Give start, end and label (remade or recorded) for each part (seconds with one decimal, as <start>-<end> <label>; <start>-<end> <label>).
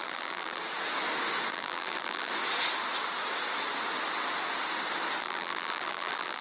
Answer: 0.0-0.6 remade; 0.6-1.5 recorded; 1.5-2.3 remade; 2.3-5.2 recorded; 5.2-6.4 remade